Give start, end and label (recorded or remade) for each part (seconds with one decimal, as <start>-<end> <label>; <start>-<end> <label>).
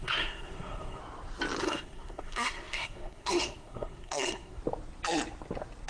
0.0-1.0 remade; 1.0-1.6 recorded; 1.6-4.6 remade; 4.6-5.9 recorded